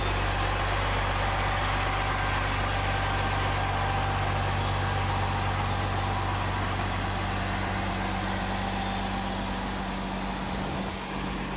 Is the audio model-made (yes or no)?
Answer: no